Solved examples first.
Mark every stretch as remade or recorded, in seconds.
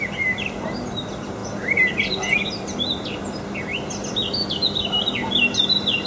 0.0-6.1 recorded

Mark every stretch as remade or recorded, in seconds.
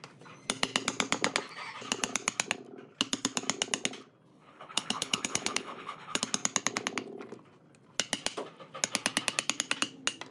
0.0-4.3 recorded; 4.3-6.2 remade; 6.2-10.3 recorded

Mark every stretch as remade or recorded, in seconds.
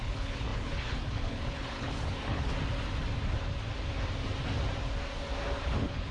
0.0-2.5 remade; 2.5-5.6 recorded; 5.6-6.1 remade